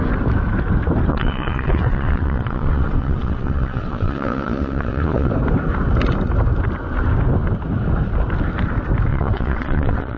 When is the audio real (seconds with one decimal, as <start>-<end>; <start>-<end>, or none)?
0.0-1.1; 5.3-9.1